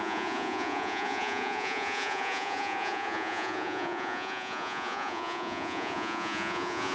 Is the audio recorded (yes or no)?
no